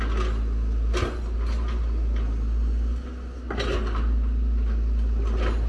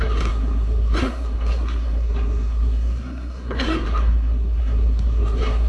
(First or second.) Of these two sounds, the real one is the first